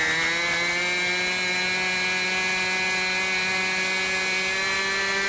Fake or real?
real